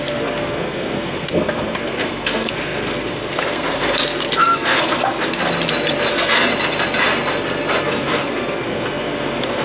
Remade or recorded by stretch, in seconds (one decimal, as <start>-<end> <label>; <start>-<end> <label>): 0.0-5.4 remade; 5.4-6.1 recorded; 6.1-6.5 remade; 6.5-7.8 recorded; 7.8-9.6 remade